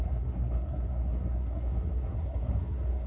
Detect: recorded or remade remade